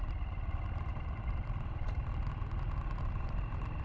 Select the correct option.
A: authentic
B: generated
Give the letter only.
A